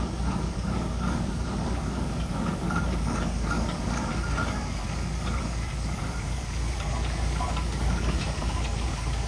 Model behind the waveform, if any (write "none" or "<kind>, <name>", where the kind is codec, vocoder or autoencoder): codec, DAC